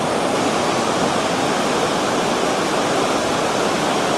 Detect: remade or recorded recorded